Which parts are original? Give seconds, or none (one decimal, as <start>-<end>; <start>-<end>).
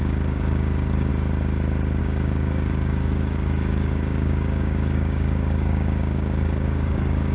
1.1-2.0